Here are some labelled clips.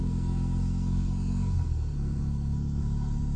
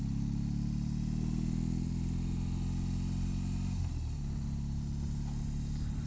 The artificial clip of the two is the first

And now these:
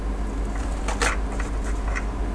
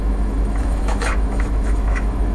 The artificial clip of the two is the second